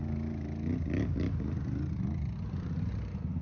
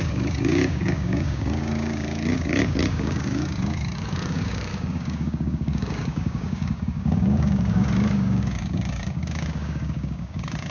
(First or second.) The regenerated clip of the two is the second